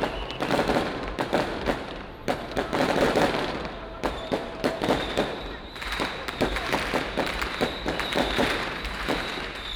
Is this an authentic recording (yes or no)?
no